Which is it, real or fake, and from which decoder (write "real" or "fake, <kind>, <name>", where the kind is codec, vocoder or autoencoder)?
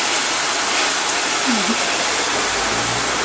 real